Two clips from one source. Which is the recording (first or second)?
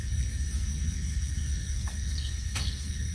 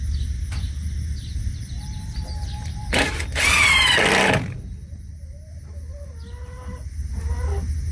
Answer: second